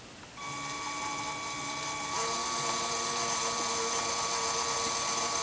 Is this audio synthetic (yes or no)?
no